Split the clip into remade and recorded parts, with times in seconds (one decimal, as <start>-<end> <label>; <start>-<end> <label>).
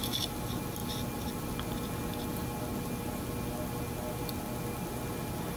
0.0-5.6 recorded